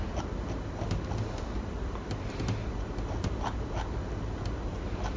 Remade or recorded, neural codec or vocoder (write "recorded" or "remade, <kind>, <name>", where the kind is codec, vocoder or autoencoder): recorded